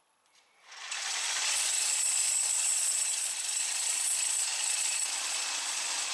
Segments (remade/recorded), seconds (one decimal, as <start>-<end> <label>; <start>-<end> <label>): 0.0-6.1 remade